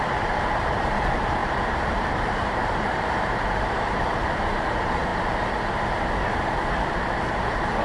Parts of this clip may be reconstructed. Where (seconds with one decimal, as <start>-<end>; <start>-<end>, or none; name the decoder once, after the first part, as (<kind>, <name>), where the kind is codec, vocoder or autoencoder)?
0.0-5.1 (vocoder, BigVGAN v2); 7.3-7.8